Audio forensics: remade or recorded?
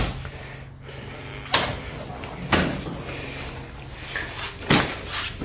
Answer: recorded